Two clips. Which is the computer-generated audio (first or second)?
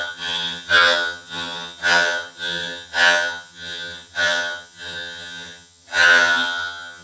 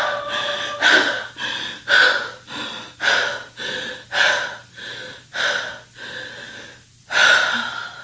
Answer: first